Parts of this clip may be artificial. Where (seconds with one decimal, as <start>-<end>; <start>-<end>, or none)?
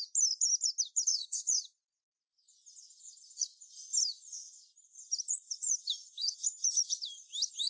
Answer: 1.1-2.2; 4.9-7.7